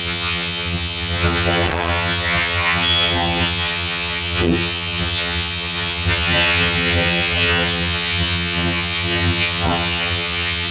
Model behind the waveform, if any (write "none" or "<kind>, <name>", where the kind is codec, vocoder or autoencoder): vocoder, HiFi-GAN